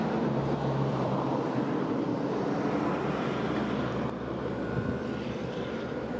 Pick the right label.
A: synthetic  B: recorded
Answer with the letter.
A